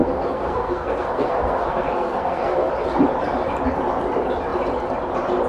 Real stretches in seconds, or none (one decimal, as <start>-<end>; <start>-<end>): 2.7-5.5